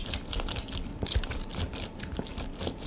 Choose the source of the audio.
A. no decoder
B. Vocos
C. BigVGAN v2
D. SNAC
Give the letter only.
C